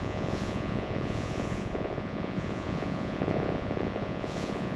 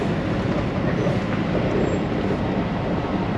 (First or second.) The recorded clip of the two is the second